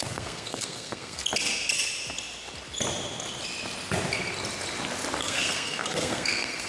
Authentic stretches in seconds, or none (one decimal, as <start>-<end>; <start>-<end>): 1.2-5.2